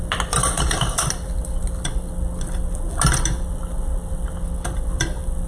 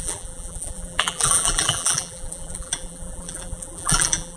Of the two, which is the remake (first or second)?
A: second